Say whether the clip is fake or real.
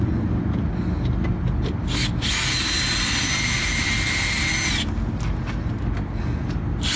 real